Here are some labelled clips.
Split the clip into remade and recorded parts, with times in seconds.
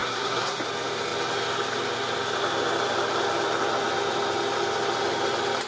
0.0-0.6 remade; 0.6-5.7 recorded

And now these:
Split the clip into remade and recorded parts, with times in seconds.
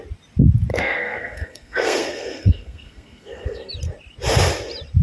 0.0-0.7 recorded; 0.7-3.7 remade; 3.7-5.0 recorded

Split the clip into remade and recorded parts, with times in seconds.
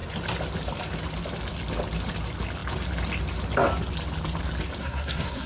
0.0-4.8 recorded; 4.8-5.5 remade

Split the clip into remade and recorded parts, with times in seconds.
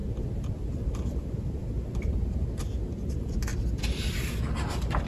0.0-5.1 recorded